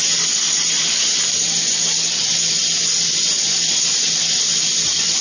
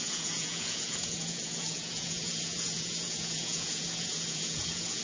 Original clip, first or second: first